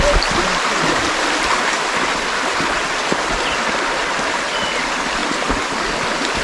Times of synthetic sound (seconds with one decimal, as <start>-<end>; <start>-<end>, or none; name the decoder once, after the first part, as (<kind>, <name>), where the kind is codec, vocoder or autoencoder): none